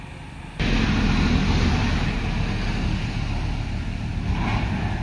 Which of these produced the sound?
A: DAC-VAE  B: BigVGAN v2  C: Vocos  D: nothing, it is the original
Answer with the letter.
D